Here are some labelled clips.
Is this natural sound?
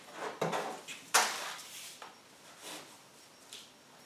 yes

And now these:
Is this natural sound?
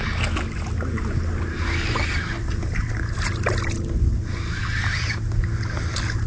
yes